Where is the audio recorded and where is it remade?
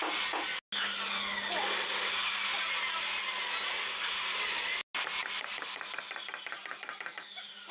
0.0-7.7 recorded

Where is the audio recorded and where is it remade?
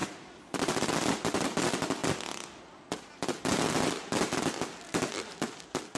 0.0-0.6 remade; 0.6-6.0 recorded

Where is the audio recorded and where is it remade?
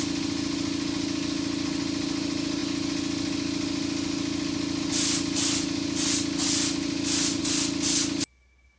0.0-8.8 recorded